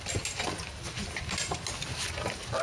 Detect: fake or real real